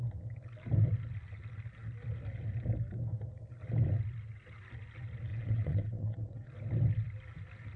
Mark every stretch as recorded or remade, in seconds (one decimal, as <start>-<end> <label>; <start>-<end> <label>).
0.0-5.3 recorded; 5.3-6.5 remade; 6.5-7.8 recorded